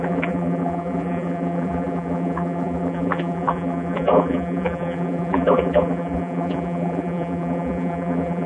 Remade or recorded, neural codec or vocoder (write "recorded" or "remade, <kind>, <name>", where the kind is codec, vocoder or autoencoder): remade, vocoder, BigVGAN v2